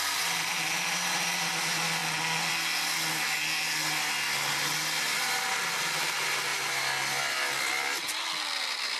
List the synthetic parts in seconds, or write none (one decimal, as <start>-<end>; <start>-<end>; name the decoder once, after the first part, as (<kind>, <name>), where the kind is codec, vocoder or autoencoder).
none